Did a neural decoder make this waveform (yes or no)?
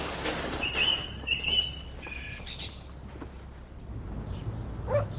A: no